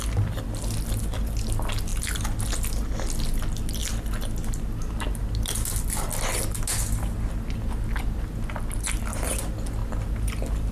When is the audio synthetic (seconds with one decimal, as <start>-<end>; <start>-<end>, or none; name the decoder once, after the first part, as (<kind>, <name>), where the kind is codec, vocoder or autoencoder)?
none